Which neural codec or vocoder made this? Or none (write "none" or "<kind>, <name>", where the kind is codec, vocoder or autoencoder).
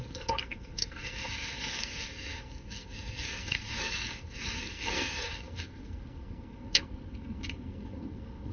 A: codec, SNAC